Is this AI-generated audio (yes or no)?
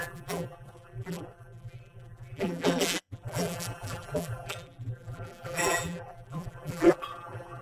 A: yes